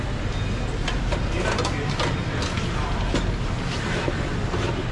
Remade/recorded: recorded